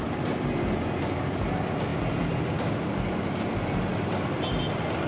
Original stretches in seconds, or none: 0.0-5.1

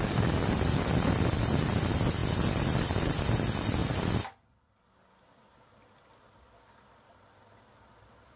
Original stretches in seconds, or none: 2.2-3.1

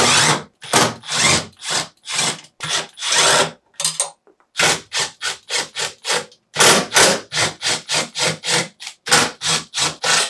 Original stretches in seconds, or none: 0.0-10.3

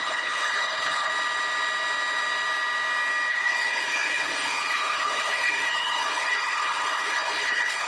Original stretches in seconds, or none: 1.1-3.3

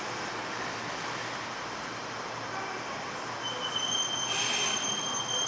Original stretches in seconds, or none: 0.0-5.5

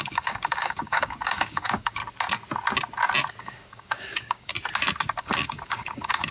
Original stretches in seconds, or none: 2.0-3.4; 4.5-5.2